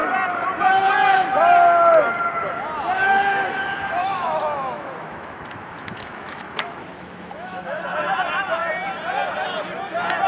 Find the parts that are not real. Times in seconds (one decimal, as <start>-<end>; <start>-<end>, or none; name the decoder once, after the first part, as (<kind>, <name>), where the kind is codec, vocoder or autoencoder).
4.0-7.8 (autoencoder, DAC-VAE)